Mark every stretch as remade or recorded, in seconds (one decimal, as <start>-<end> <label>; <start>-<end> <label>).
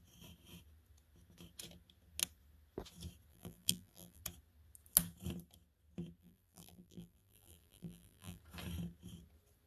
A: 0.0-3.3 recorded; 3.3-4.2 remade; 4.2-6.2 recorded; 6.2-8.4 remade; 8.4-9.7 recorded